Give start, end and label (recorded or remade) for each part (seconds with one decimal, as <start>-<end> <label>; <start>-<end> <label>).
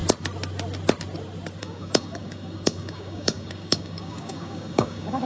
0.0-1.6 recorded; 1.6-5.3 remade